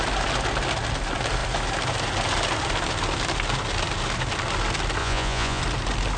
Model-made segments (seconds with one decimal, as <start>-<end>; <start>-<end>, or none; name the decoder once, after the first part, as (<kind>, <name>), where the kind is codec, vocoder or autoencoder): 5.0-5.6 (vocoder, Vocos)